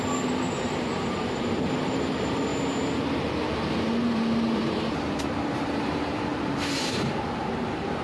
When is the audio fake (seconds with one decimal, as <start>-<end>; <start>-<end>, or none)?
0.0-2.5; 3.6-8.0